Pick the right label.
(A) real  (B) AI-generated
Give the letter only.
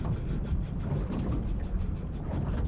A